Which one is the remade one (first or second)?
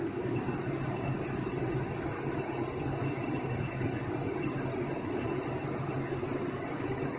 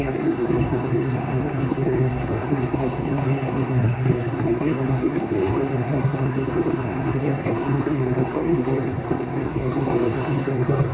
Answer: second